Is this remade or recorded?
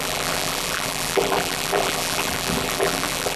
remade